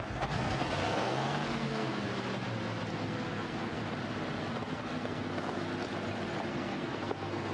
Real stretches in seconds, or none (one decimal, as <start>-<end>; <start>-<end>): 2.1-2.9; 3.8-4.4; 5.7-6.5

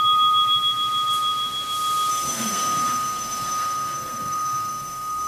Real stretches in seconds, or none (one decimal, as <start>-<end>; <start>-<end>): 0.0-2.1

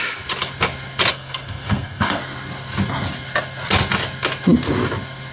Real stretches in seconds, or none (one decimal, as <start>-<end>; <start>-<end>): 0.0-1.1; 2.2-5.3

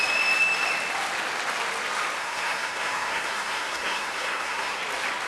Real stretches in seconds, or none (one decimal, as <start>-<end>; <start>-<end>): 0.0-2.2; 4.8-5.3

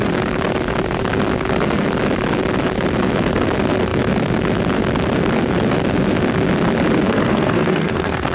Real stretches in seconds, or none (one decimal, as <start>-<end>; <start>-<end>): 0.0-7.1

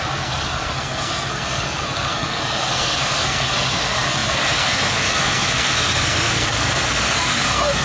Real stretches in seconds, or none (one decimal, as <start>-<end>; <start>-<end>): none